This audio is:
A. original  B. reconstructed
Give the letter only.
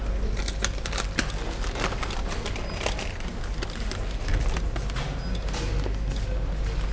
A